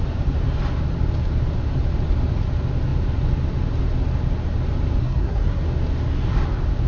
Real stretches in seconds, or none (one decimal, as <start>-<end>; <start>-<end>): 0.0-5.0; 5.6-6.9